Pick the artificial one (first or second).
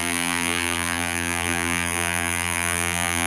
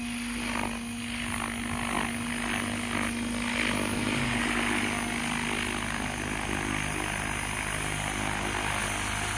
first